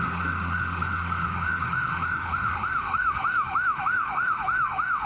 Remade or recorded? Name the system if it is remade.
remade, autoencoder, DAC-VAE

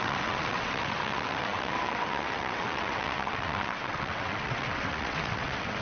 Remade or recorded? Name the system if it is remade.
remade, vocoder, WaveNeXt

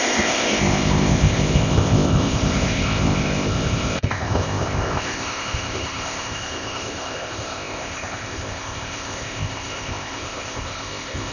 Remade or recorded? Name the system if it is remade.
remade, codec, ZipCodec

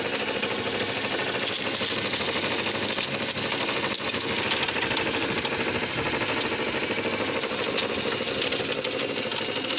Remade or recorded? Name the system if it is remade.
recorded